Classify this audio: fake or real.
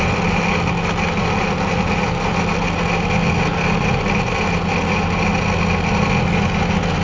real